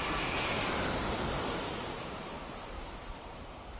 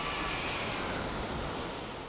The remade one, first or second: first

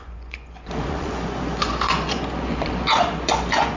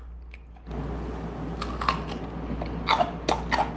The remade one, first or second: first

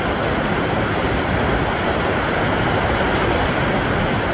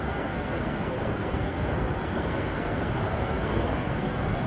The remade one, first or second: second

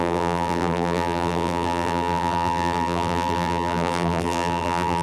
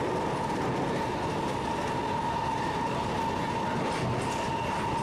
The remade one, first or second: first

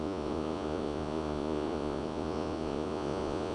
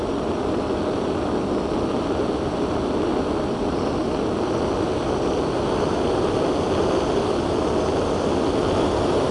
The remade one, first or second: first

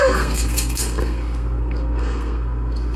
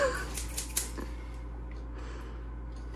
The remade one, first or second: first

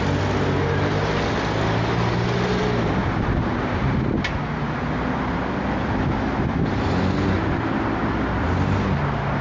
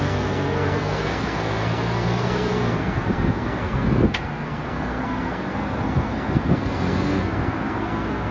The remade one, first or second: second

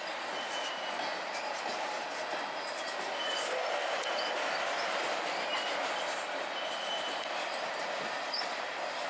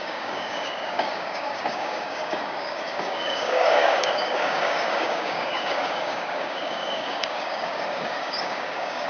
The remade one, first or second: second